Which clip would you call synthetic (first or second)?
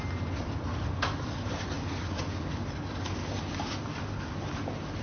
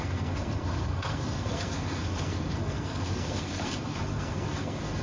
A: second